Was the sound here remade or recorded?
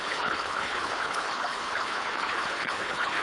remade